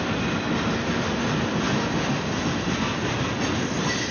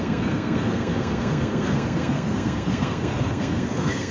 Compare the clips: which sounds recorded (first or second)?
first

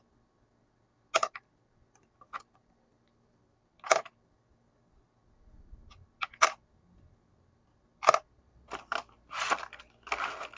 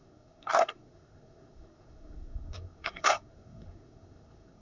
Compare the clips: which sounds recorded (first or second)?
first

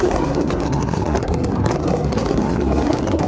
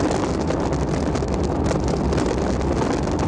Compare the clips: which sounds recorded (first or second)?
second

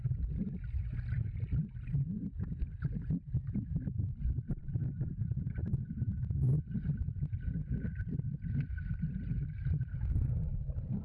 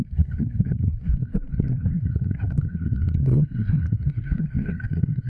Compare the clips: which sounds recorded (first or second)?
first